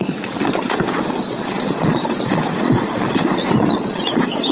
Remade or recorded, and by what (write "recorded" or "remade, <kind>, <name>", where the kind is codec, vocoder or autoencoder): remade, vocoder, Vocos